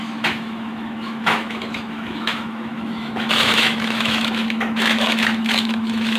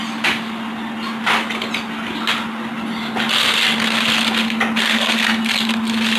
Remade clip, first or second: first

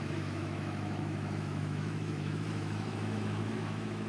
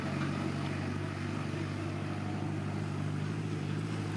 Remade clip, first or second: first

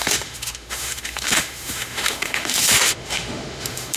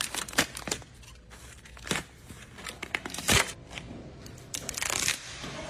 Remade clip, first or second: first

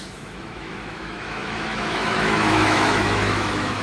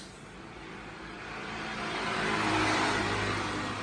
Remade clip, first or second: first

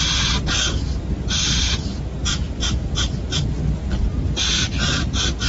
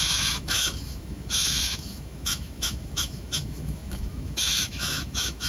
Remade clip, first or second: second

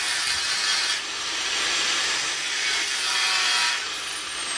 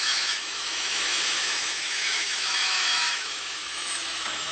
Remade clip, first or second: second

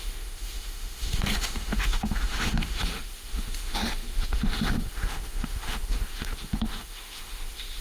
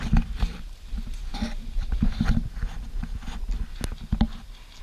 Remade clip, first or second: first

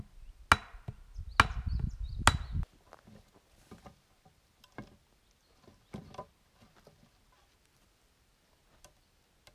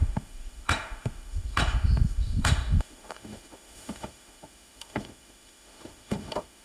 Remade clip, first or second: second